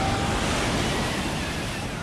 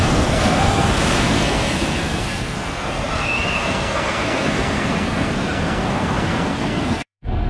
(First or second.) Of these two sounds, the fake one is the second